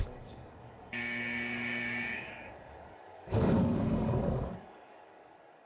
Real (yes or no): no